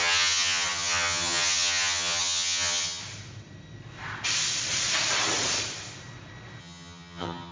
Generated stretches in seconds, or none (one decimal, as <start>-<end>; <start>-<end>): 0.0-3.0; 6.6-7.5